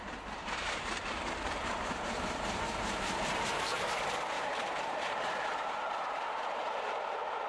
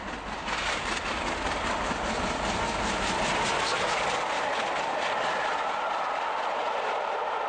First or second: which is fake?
first